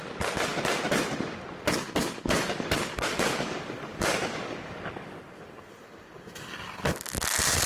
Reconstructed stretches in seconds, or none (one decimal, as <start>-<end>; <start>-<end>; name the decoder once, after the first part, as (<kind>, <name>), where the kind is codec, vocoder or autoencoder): 2.0-5.2 (codec, DAC)